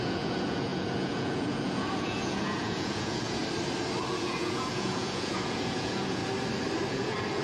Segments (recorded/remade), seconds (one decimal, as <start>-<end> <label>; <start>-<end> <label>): 0.0-3.4 remade; 3.4-4.0 recorded; 4.0-6.2 remade; 6.2-6.9 recorded; 6.9-7.4 remade